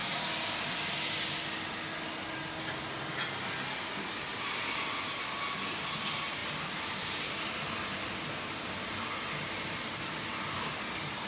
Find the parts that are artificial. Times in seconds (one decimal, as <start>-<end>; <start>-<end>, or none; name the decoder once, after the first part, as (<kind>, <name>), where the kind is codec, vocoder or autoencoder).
none